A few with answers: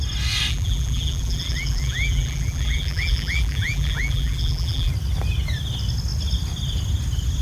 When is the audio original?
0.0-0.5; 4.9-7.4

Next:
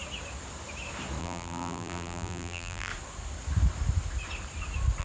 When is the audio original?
0.0-1.2; 2.9-5.0

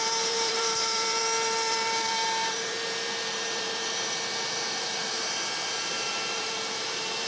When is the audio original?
1.2-1.7; 5.2-5.9

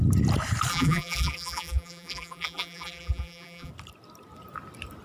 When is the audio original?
0.0-0.7; 3.7-5.0

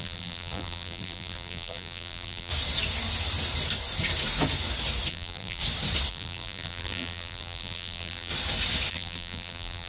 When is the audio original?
2.5-5.1; 5.6-6.1; 8.3-8.9